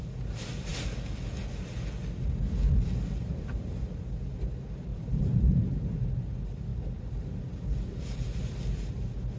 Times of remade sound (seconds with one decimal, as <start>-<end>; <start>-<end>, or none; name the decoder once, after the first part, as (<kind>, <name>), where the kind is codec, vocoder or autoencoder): 4.9-6.1 (vocoder, BigVGAN v2); 6.7-7.4